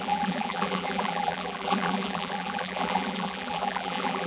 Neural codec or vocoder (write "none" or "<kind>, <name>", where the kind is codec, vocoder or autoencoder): vocoder, BigVGAN v2